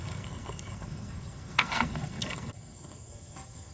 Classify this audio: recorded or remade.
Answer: remade